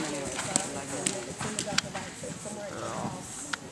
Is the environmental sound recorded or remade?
recorded